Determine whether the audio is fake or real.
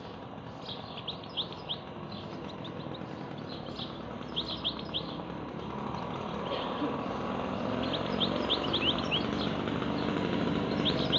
real